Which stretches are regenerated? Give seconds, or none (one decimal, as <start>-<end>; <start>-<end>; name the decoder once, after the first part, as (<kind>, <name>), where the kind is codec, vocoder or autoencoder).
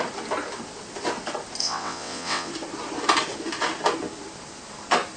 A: 1.6-2.5 (vocoder, WaveNeXt)